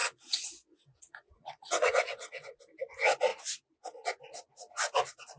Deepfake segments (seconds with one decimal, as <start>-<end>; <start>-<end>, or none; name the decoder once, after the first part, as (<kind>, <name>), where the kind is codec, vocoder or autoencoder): 0.0-2.6 (vocoder, WaveNeXt)